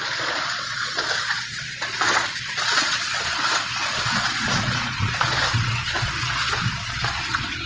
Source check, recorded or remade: remade